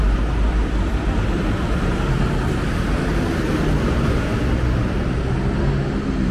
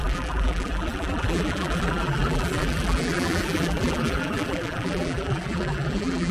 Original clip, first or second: first